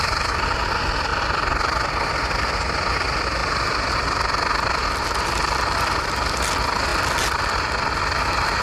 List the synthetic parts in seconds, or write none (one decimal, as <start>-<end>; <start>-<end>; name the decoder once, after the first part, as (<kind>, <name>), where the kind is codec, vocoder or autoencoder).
none